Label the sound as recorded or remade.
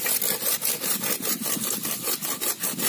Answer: recorded